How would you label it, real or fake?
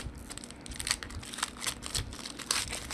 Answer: real